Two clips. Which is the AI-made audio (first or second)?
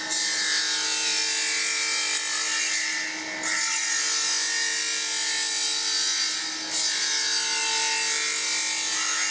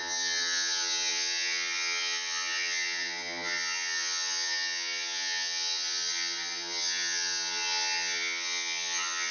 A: second